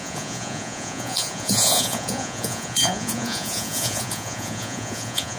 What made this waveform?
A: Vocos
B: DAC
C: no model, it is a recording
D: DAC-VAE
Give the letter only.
A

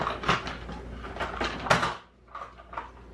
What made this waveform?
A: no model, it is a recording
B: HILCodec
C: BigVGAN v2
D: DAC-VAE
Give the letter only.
A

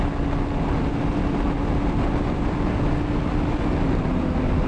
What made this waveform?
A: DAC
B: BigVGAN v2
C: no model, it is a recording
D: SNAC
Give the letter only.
C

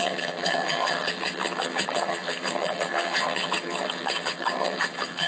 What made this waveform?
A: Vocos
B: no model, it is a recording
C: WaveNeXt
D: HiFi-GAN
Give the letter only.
D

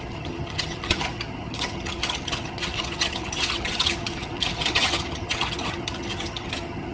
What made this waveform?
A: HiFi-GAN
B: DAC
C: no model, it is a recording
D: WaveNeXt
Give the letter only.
A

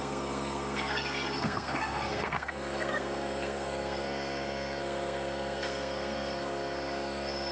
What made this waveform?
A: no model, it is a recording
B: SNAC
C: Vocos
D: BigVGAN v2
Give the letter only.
B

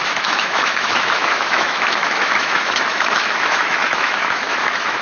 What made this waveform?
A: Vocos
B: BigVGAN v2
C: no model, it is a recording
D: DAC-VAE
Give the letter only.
D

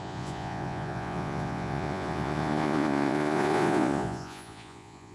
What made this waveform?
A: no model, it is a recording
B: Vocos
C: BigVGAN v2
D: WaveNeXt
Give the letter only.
B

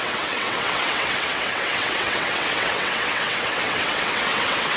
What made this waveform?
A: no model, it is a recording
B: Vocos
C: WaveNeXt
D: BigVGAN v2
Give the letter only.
C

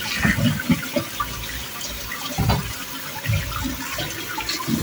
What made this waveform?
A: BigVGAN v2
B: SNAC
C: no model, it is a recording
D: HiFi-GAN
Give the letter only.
C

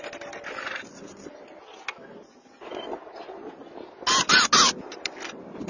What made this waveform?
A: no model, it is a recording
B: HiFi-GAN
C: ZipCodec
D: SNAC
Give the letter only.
A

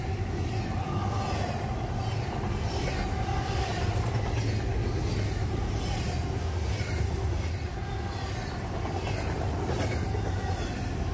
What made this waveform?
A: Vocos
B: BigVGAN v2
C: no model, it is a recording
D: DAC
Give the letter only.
C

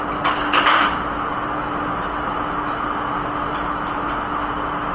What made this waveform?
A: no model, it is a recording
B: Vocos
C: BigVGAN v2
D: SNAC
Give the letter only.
A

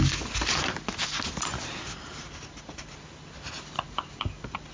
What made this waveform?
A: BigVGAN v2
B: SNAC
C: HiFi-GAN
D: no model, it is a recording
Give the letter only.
D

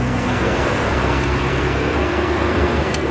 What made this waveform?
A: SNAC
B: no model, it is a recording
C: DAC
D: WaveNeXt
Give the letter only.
A